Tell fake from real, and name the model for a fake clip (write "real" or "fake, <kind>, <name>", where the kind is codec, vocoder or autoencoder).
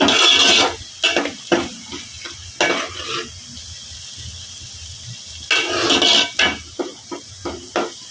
real